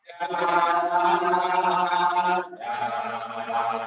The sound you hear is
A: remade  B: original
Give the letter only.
A